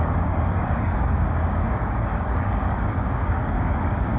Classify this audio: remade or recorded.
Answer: remade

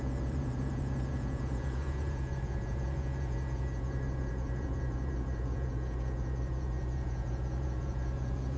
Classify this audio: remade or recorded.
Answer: remade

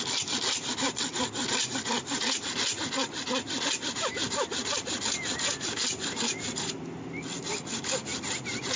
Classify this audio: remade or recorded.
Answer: recorded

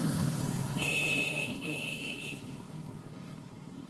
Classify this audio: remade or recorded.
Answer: remade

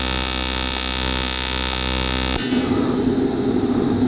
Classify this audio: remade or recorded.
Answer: recorded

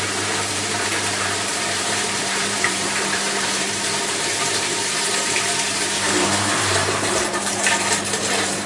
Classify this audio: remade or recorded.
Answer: remade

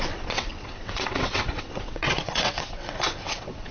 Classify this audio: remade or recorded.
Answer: remade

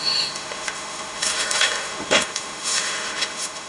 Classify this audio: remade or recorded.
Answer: remade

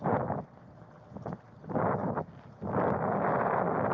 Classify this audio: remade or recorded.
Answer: recorded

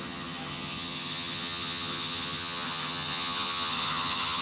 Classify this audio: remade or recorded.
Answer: remade